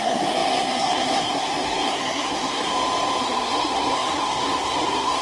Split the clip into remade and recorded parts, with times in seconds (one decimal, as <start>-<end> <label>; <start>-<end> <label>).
0.0-2.7 remade; 2.7-3.2 recorded; 3.2-5.2 remade